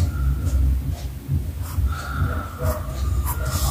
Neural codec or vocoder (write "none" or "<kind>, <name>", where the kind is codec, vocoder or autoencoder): none